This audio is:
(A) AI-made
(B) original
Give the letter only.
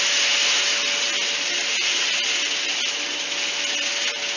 B